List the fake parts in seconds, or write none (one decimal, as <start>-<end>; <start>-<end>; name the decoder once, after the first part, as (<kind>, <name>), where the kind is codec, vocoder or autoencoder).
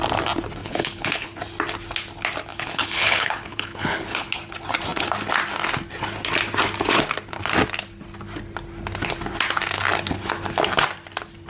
0.6-1.4 (codec, HILCodec); 2.5-4.3